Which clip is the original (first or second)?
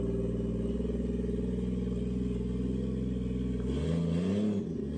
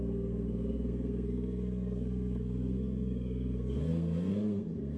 first